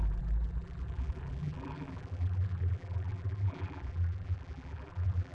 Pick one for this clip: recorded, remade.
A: remade